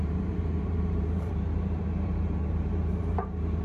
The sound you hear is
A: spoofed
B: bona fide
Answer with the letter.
A